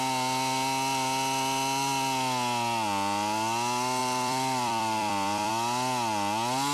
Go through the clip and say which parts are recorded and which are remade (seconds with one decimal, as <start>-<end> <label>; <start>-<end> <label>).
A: 0.0-4.0 recorded; 4.0-5.5 remade; 5.5-6.7 recorded